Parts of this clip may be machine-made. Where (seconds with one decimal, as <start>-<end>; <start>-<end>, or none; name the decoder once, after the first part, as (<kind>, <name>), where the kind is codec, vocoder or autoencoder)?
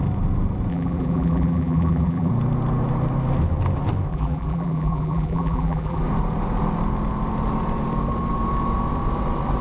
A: 0.7-2.3 (vocoder, BigVGAN v2); 4.1-6.0